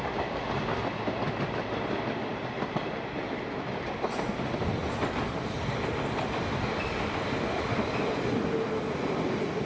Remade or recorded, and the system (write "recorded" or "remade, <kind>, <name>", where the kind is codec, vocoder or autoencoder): recorded